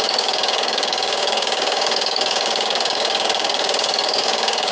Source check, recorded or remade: remade